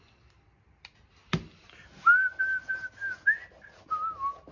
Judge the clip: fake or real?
real